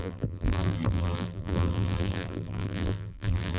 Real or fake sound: fake